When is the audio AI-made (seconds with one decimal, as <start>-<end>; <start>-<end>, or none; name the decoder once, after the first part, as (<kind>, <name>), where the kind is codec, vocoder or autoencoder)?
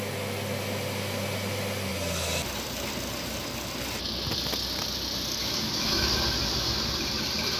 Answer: 5.4-6.1 (autoencoder, DAC-VAE)